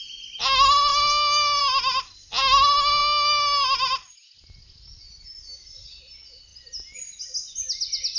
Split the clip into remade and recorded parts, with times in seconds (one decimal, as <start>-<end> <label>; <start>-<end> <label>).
0.0-8.2 recorded